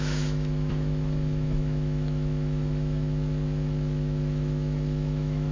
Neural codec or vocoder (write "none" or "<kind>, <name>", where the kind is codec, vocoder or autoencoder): autoencoder, DAC-VAE